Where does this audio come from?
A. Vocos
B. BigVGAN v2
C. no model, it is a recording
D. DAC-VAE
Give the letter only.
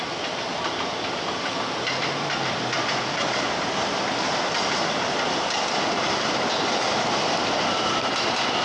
B